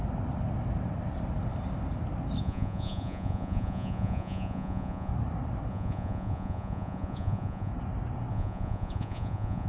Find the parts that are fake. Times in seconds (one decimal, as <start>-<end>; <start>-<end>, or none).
2.4-5.1; 5.7-7.7; 8.3-9.7